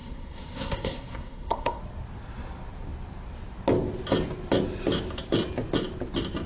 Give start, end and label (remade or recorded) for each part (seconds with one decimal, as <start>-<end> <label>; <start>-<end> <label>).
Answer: 0.0-1.8 remade; 1.8-6.5 recorded